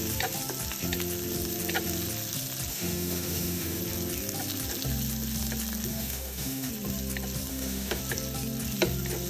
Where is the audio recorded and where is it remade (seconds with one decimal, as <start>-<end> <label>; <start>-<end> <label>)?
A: 0.0-2.7 recorded; 2.7-3.8 remade; 3.8-5.9 recorded; 5.9-6.7 remade; 6.7-7.5 recorded; 7.5-8.0 remade; 8.0-9.3 recorded